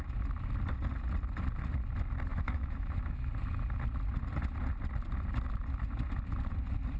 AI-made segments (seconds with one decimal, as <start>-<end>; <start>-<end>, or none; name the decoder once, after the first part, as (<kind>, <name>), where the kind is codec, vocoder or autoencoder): 2.3-3.3 (autoencoder, DAC-VAE)